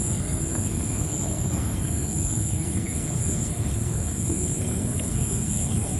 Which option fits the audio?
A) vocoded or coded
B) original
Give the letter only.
A